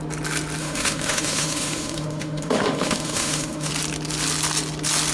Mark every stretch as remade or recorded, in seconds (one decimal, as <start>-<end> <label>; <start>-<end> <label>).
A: 0.0-0.6 recorded; 0.6-3.7 remade; 3.7-5.1 recorded